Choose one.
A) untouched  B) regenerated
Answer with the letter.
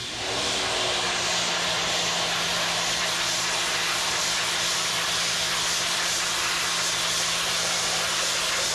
A